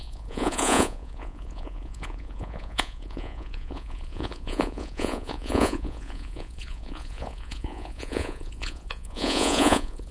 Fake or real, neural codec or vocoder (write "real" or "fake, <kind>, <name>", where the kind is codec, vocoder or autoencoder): fake, vocoder, Vocos